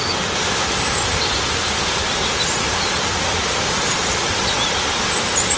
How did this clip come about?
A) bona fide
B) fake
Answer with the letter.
A